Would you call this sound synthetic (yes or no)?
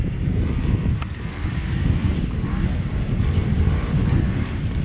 yes